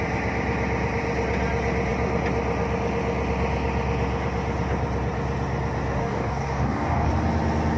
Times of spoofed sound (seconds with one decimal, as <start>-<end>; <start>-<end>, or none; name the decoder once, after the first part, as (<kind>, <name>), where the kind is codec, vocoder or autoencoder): 6.0-7.1 (codec, DAC)